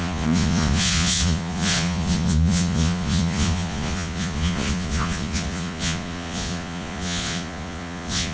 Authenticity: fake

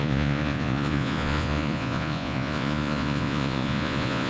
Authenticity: fake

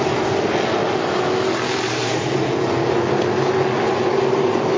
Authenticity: real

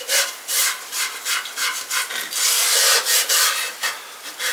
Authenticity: real